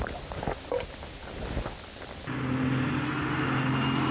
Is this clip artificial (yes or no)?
no